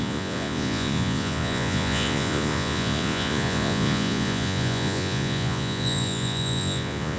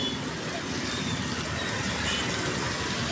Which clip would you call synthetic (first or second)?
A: first